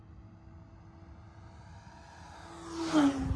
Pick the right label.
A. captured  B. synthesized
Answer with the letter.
A